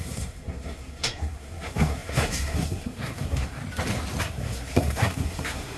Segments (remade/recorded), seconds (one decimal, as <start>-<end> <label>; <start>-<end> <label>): 0.0-3.6 remade; 3.6-4.2 recorded; 4.2-5.8 remade